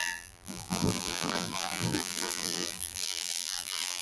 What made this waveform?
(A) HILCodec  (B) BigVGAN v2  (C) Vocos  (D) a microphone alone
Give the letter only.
B